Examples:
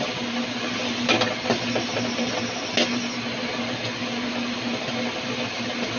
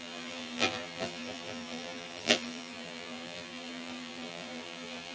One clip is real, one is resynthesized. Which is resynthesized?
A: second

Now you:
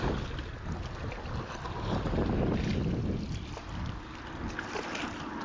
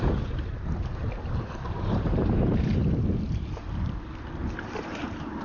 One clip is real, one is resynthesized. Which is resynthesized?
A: second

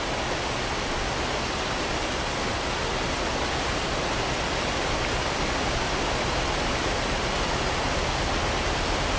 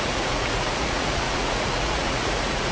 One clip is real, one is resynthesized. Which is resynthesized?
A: second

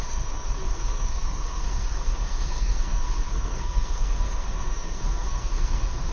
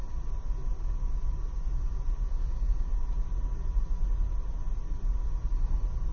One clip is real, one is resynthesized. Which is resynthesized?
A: first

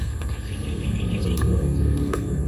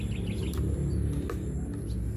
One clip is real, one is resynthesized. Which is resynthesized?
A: first